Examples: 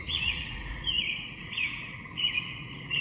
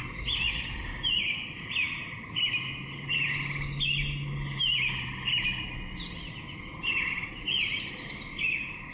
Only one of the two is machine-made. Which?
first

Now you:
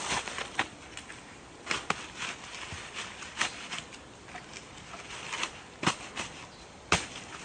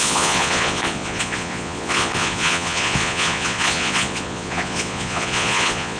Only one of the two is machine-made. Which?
second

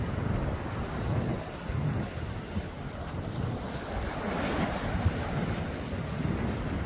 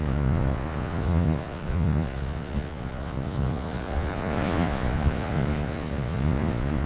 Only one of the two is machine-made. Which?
second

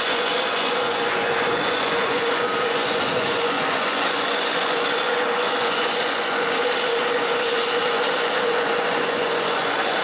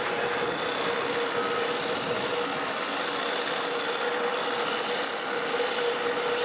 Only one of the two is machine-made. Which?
first